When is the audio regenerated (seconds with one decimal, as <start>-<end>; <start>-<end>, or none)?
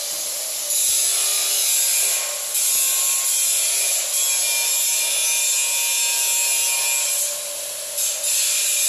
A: none